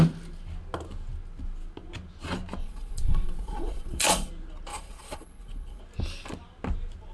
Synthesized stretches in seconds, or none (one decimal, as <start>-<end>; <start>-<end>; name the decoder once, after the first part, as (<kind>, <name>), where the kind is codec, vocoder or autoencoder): 2.6-4.3 (vocoder, Vocos); 4.7-5.8